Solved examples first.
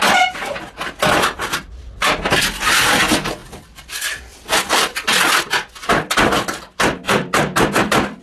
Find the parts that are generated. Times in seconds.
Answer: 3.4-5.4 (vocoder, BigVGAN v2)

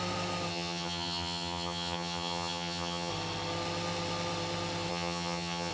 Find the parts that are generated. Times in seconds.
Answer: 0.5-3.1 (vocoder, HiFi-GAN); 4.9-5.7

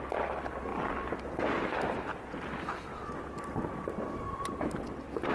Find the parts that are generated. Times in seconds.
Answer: none